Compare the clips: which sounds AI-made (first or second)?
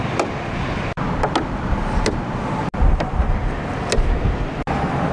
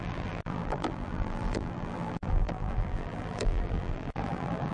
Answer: second